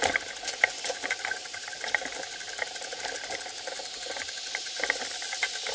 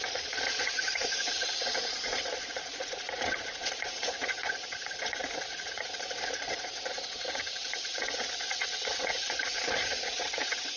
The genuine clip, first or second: first